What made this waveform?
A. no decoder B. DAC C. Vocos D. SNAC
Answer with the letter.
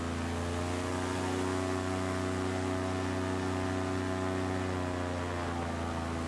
A